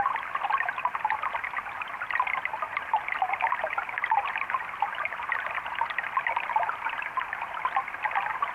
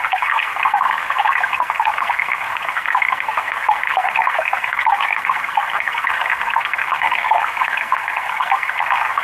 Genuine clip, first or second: first